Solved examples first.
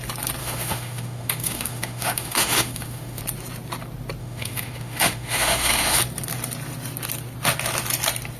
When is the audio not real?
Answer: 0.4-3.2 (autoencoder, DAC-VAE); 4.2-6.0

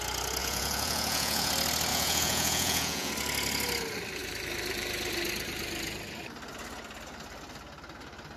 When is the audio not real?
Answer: 0.4-1.5 (vocoder, Vocos); 1.9-3.1

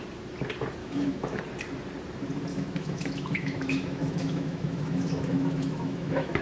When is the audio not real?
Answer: 0.8-1.4 (autoencoder, DAC-VAE); 2.5-6.4

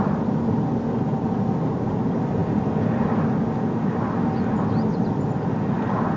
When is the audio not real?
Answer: none

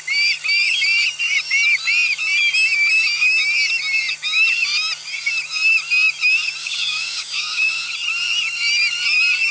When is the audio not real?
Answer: 6.6-7.8 (codec, DAC)

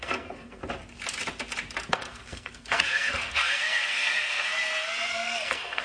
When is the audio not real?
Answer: 0.0-0.6 (codec, SNAC); 1.9-4.5; 5.1-5.8

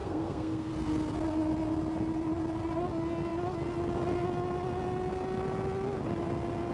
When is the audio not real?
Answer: 0.0-0.7 (codec, SNAC)

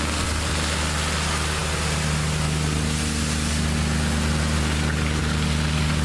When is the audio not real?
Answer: none